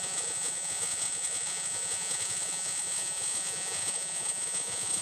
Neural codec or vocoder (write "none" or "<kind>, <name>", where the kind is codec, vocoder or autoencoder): vocoder, Vocos